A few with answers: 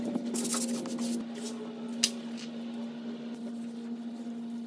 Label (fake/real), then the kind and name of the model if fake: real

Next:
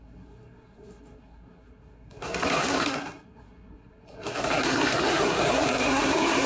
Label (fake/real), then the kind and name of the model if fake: fake, codec, SNAC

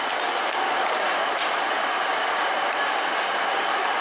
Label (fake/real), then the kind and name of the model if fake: real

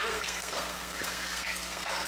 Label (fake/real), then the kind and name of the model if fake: fake, codec, SNAC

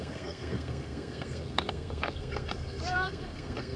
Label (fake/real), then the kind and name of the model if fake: fake, codec, SNAC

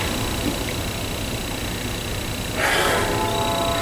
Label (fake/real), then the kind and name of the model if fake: real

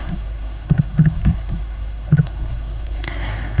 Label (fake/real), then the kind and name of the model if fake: fake, codec, SNAC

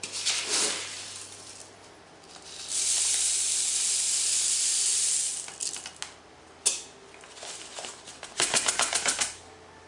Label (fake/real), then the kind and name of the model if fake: real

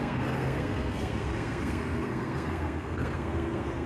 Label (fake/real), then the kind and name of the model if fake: fake, codec, SNAC